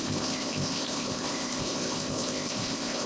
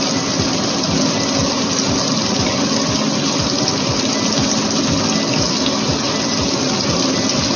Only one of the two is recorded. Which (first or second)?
second